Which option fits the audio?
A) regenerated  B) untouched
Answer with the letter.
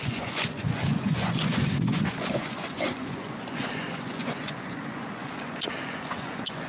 A